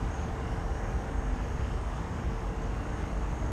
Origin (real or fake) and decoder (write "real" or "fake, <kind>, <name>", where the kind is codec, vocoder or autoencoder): fake, codec, DAC